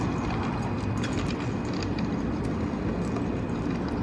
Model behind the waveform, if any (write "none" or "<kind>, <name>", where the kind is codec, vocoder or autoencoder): none